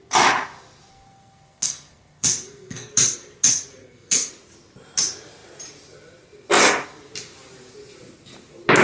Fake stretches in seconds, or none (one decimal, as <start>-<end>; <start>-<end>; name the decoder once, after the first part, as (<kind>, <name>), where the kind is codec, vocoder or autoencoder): 0.9-2.9 (codec, SNAC); 3.8-4.3